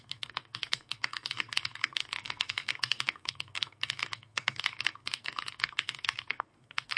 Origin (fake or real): fake